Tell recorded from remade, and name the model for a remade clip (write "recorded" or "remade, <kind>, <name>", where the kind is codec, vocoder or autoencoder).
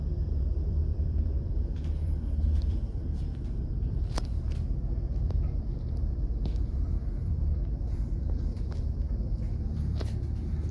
remade, vocoder, BigVGAN v2